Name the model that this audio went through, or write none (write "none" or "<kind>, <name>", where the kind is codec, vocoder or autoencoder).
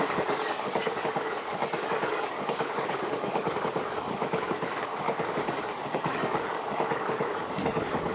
codec, DAC